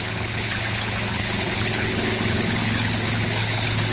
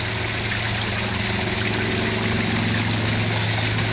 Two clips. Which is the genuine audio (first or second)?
second